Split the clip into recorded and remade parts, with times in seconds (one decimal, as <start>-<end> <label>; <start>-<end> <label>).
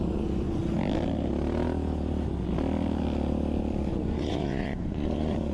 0.0-0.6 remade; 0.6-3.9 recorded; 3.9-5.5 remade